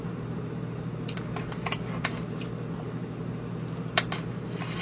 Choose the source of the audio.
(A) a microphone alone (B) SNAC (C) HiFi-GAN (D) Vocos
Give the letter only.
A